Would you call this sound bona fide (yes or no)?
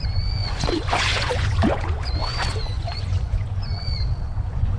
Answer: no